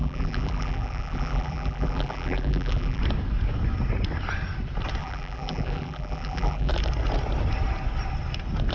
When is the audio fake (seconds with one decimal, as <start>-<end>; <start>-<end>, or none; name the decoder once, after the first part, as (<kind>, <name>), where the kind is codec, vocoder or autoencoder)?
0.0-3.0 (vocoder, BigVGAN v2); 5.0-6.7